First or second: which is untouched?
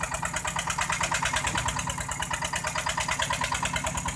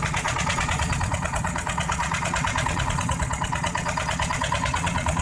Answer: first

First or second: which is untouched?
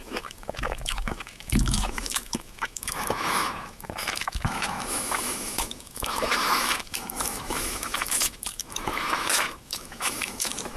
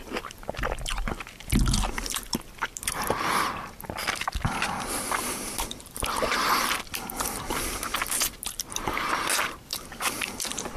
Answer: second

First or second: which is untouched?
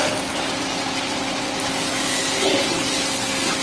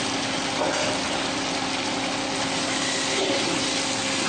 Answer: first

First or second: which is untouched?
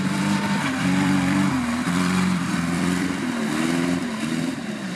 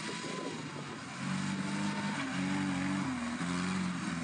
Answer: second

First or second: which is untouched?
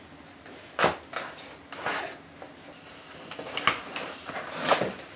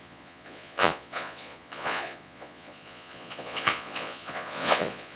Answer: first